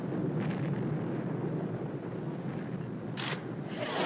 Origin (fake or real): real